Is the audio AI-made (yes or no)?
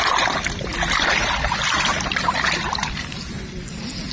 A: no